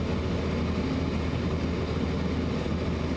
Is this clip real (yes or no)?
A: yes